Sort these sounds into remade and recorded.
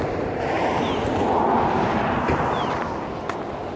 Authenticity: recorded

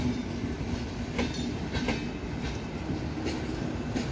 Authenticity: recorded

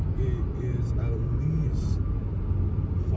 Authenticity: recorded